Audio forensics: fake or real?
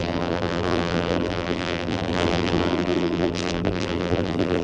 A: fake